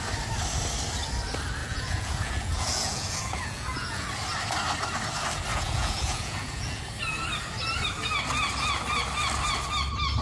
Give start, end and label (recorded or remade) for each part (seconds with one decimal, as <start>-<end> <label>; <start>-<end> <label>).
0.0-1.6 recorded; 1.6-4.1 remade; 4.1-5.5 recorded; 5.5-6.8 remade; 6.8-10.2 recorded